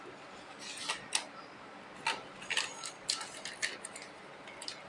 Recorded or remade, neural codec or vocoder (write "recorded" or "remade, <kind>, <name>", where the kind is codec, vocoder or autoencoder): recorded